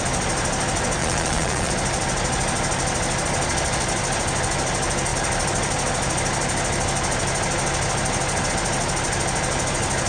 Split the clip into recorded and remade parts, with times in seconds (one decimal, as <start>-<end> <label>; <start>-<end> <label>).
0.0-1.0 recorded; 1.0-1.7 remade; 1.7-10.1 recorded